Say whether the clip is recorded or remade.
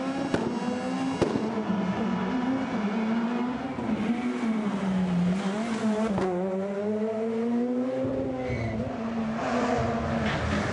recorded